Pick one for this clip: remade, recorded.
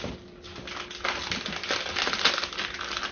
recorded